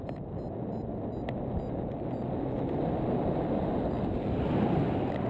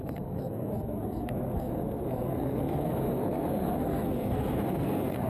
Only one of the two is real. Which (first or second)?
first